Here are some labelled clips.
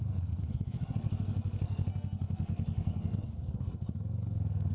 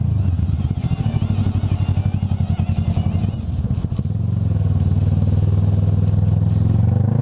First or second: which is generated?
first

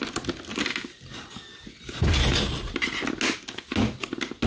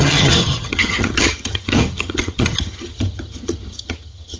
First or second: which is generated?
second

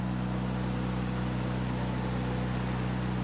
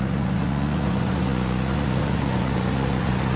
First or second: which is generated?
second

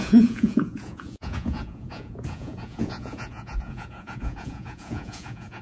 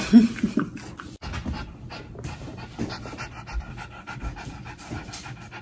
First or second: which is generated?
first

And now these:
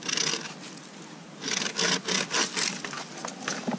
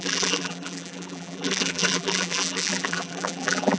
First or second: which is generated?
second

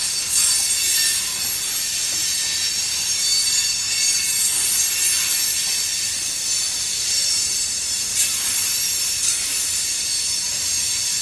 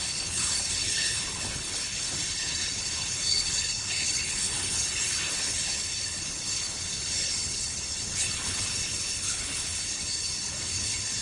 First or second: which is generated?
second